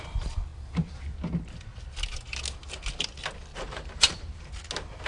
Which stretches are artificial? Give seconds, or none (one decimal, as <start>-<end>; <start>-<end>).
3.5-4.4

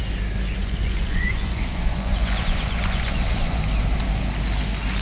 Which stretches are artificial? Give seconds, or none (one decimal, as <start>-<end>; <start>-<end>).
0.6-3.6

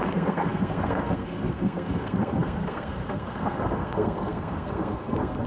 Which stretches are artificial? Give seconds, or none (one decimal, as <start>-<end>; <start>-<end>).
0.0-5.5

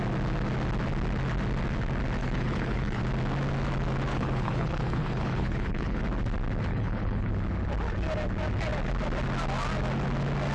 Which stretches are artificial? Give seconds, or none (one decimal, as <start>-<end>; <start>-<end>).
2.2-3.0; 4.1-6.0; 6.7-7.3

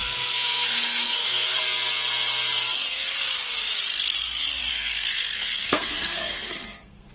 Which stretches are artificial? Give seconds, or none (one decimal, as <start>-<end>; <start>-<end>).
0.0-1.6; 4.7-7.1

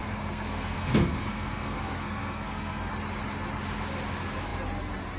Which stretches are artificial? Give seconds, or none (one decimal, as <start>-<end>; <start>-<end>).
0.0-2.9